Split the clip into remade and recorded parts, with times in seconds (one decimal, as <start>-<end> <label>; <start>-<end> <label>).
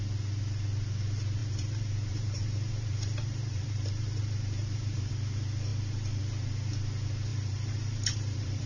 0.0-1.4 recorded; 1.4-5.1 remade; 5.1-7.3 recorded; 7.3-8.7 remade